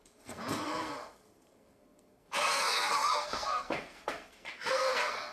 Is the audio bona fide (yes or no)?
no